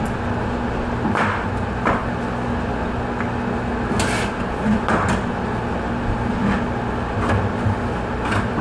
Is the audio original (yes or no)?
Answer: yes